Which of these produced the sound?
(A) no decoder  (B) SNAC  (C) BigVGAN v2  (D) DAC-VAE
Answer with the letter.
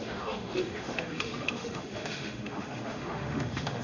D